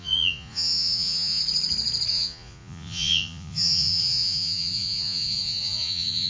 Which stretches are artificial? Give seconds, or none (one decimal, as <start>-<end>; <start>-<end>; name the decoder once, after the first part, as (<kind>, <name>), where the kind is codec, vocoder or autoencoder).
0.0-1.4 (vocoder, Vocos); 2.1-6.3